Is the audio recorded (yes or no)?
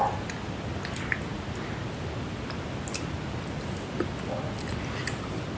yes